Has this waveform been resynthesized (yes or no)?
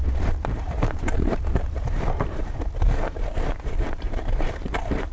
yes